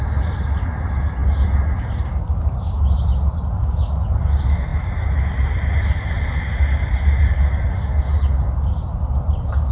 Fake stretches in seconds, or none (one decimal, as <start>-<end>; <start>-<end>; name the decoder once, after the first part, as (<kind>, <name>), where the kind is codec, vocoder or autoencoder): none